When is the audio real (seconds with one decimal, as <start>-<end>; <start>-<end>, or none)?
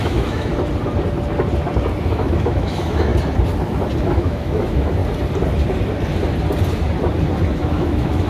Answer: 0.5-2.0; 3.1-4.0; 5.0-7.5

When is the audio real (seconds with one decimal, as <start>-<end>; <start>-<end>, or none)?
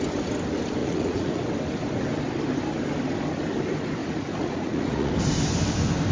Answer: 0.0-0.8; 1.4-4.0; 5.1-6.1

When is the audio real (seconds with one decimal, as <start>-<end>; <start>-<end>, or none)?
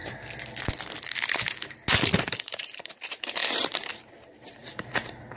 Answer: 0.0-2.1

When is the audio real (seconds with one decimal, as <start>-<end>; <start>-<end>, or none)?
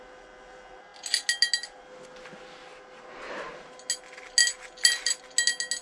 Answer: 0.0-2.7; 3.7-4.4; 5.2-5.8